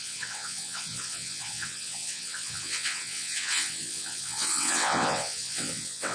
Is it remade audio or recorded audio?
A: remade